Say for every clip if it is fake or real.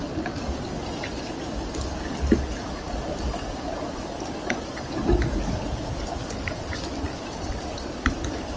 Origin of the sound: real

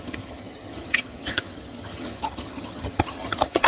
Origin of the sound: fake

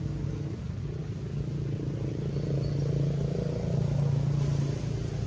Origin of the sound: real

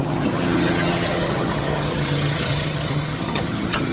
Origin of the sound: fake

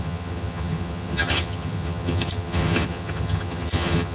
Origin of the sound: fake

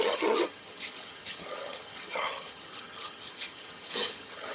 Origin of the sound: fake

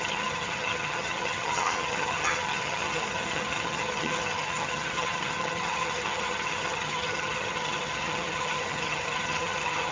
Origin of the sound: fake